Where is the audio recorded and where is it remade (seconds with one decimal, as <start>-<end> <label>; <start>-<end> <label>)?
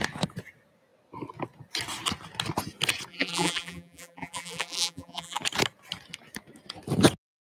0.0-3.1 recorded; 3.1-5.4 remade; 5.4-7.4 recorded